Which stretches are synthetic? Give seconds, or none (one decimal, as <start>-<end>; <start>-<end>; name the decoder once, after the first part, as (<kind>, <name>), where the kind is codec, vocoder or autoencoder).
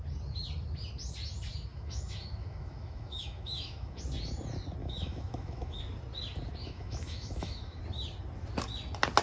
1.7-4.0 (autoencoder, DAC-VAE); 4.8-5.8; 6.6-7.8